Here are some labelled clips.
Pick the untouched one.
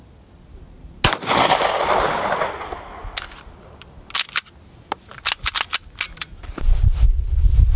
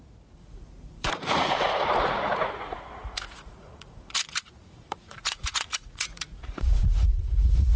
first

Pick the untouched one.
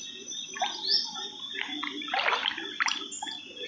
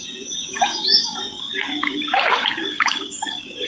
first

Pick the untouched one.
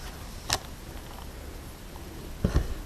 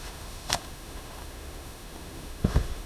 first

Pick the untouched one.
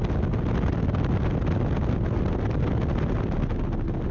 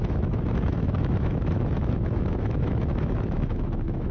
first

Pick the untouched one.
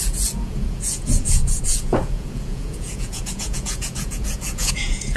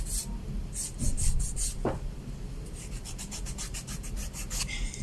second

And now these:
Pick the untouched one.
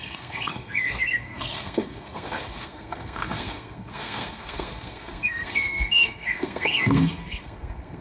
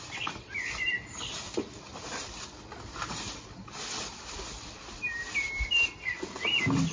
second